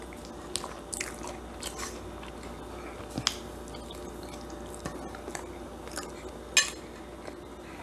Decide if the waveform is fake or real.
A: real